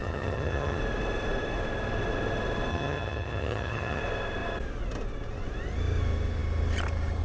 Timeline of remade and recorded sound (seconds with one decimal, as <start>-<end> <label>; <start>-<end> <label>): 0.0-0.8 remade; 0.8-2.7 recorded; 2.7-4.0 remade; 4.0-7.2 recorded